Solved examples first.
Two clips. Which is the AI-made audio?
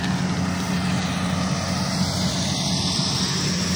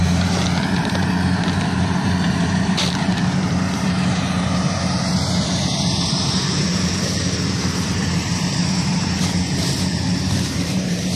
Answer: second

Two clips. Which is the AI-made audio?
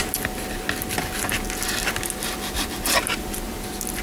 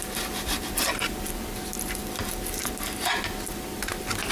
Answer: second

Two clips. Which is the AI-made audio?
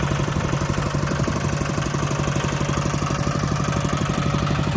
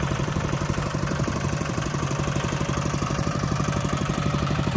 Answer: second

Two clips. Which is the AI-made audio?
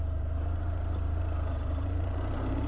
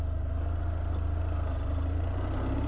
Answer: first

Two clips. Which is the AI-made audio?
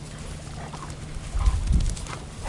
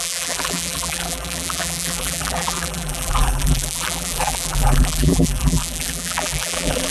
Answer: second